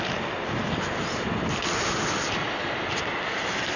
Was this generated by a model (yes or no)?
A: no